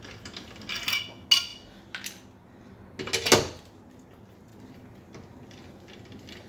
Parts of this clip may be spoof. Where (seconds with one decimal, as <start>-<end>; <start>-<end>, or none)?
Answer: none

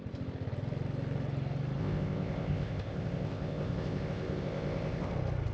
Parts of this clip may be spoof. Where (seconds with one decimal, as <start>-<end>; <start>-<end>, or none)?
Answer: 1.8-5.1